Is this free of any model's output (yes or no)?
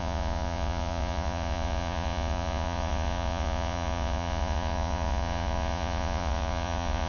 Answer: no